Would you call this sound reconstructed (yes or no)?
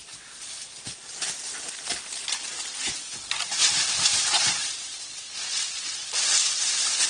yes